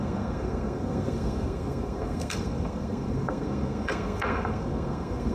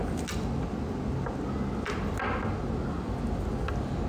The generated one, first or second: first